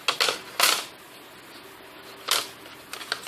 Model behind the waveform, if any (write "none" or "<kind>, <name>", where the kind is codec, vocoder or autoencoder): none